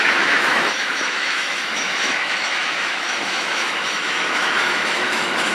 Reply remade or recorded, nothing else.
remade